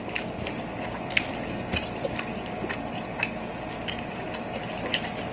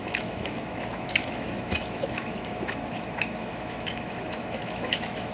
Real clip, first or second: first